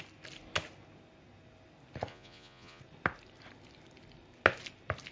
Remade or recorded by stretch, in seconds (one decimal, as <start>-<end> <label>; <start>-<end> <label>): 0.0-2.1 recorded; 2.1-2.8 remade; 2.8-5.1 recorded